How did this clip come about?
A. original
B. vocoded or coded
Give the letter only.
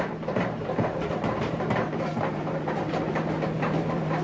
B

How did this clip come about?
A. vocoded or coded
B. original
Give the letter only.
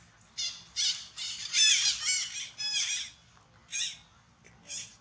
B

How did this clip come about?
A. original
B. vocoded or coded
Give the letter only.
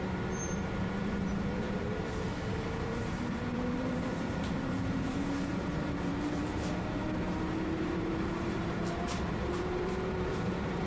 B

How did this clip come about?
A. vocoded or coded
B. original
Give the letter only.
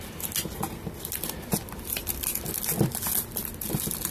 B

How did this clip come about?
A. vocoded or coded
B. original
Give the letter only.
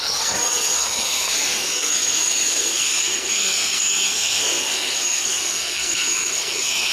A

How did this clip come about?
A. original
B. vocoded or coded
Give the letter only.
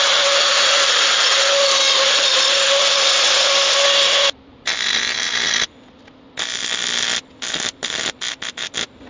A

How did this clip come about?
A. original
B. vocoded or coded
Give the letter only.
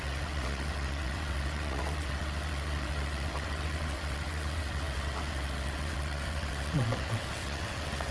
B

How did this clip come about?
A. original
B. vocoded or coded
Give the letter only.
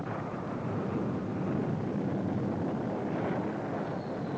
A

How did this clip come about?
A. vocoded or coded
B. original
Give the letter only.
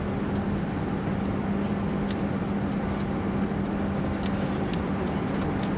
B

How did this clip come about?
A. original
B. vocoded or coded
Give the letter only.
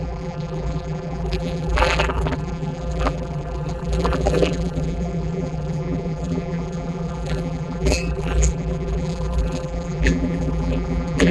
B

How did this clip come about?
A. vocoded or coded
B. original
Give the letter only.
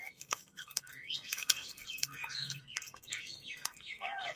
A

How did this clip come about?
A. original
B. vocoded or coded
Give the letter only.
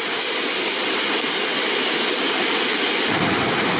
A